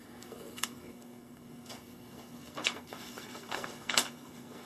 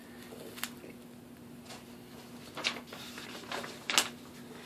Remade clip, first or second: first